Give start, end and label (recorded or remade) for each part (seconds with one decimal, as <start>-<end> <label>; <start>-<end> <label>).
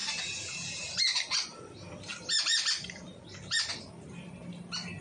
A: 0.0-0.9 remade; 0.9-2.1 recorded; 2.1-2.7 remade; 2.7-5.0 recorded